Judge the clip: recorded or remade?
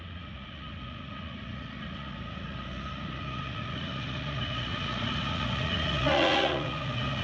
remade